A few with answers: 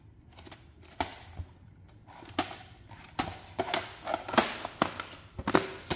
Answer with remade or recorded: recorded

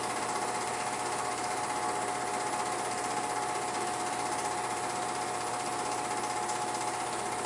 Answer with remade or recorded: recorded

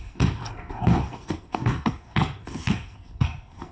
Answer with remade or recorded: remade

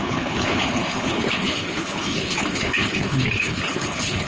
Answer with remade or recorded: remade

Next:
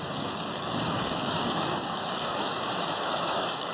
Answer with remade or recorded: remade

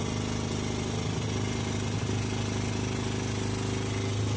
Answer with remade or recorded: recorded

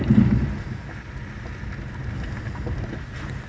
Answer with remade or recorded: recorded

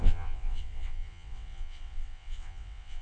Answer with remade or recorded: remade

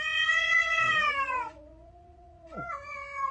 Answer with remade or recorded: remade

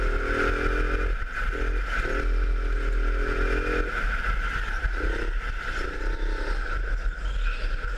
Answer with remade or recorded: recorded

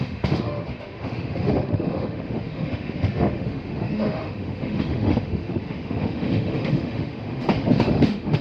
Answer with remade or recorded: remade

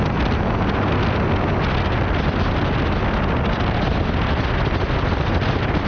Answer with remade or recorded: recorded